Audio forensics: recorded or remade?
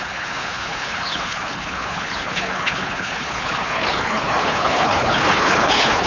remade